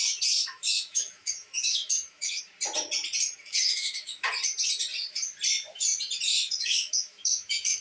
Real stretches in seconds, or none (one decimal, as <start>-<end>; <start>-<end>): 0.0-0.4; 2.4-3.4; 4.3-6.3